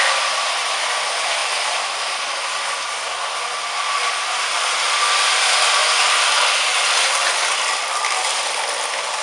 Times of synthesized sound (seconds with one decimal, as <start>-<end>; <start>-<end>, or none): none